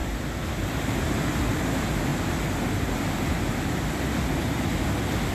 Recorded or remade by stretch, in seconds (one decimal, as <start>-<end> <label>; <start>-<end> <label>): 0.0-0.8 remade; 0.8-5.3 recorded